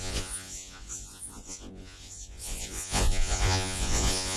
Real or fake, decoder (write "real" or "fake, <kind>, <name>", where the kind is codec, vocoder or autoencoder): fake, vocoder, Vocos